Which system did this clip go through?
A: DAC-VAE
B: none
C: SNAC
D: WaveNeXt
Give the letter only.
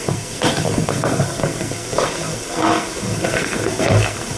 C